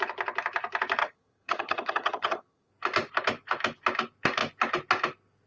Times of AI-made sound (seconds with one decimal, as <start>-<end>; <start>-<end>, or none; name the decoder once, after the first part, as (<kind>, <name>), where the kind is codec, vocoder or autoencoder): 1.0-2.7 (vocoder, HiFi-GAN)